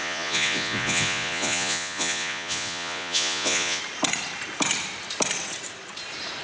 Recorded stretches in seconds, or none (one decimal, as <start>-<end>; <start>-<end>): 3.8-6.4